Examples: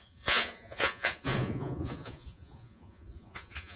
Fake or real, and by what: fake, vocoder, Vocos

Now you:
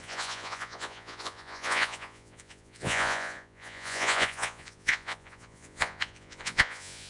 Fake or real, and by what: fake, vocoder, Vocos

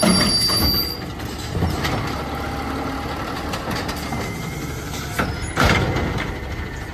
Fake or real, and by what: real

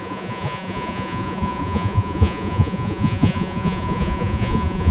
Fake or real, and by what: fake, vocoder, Vocos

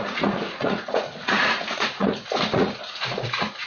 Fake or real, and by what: fake, vocoder, Vocos